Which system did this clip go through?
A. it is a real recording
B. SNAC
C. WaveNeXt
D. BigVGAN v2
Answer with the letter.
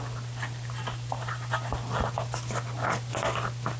A